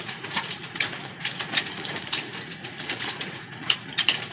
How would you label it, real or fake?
fake